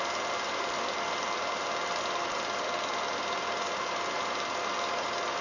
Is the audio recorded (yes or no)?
yes